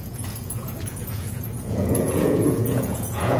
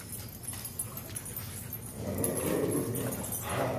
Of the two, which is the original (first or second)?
second